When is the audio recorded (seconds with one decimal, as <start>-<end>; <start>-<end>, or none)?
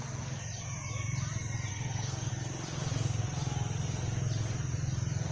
0.0-1.7; 2.3-5.3